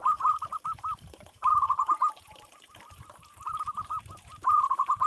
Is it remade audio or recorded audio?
remade